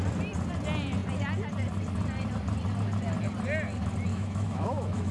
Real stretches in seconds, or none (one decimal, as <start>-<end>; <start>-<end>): 0.0-4.1

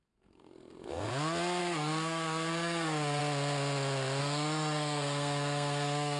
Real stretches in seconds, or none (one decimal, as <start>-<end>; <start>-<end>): 1.1-1.6; 3.2-4.2

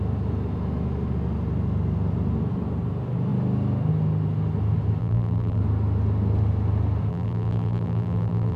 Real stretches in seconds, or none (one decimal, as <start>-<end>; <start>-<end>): 0.0-5.0; 5.6-7.1

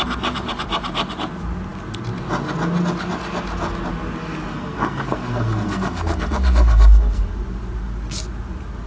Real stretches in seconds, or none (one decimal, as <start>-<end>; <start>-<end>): 0.0-4.5; 7.2-8.9